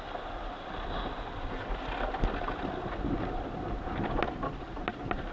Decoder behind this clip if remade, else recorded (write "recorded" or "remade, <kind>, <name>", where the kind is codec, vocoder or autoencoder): recorded